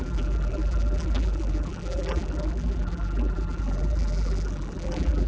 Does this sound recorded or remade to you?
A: remade